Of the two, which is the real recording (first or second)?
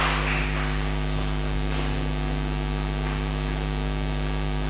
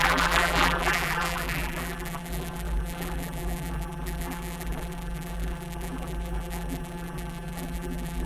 first